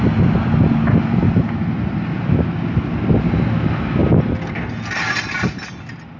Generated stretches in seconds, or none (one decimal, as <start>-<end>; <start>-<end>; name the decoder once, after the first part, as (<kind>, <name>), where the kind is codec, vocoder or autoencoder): none